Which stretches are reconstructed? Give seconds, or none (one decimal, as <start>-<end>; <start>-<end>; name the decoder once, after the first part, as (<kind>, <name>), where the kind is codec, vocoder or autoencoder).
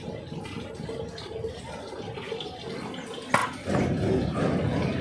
none